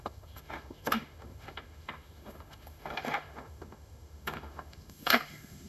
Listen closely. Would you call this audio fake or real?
fake